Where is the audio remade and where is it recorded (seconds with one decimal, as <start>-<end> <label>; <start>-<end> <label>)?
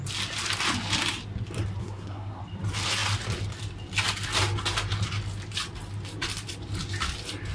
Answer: 0.0-1.8 recorded; 1.8-2.4 remade; 2.4-7.5 recorded